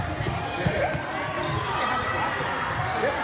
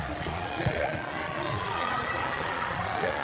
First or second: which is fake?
second